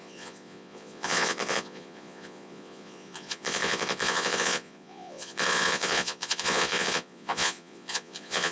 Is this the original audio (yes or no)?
no